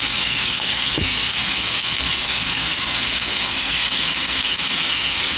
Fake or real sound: fake